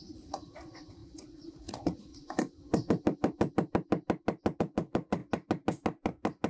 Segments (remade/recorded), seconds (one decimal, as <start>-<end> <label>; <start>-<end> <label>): 0.0-2.1 remade; 2.1-4.6 recorded; 4.6-5.2 remade; 5.2-6.5 recorded